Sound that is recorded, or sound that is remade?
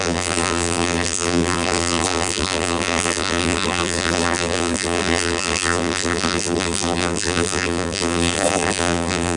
remade